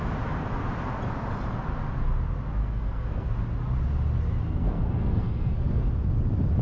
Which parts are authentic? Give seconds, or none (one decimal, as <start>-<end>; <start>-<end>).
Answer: 0.0-2.6; 3.3-4.4; 5.9-6.6